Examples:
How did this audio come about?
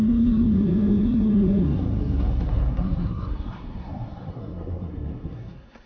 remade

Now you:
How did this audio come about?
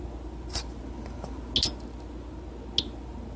recorded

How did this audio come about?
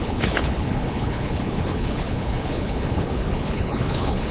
remade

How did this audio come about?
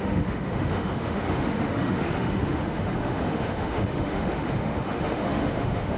remade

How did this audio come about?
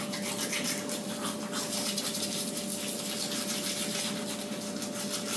recorded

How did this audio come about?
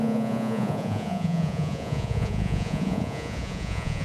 remade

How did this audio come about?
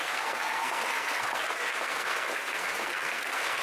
remade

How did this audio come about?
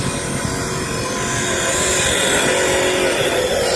recorded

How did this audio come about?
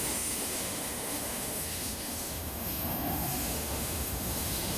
remade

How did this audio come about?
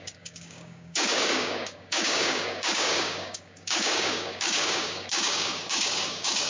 remade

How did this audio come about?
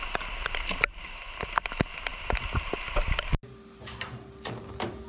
recorded